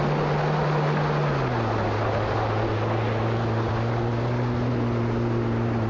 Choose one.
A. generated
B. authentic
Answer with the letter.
B